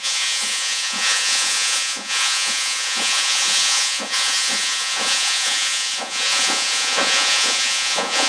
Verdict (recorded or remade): remade